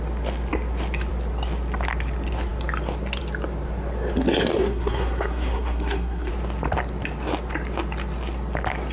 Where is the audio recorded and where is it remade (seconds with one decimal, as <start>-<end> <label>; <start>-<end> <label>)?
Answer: 0.0-4.5 recorded; 4.5-6.3 remade; 6.3-8.9 recorded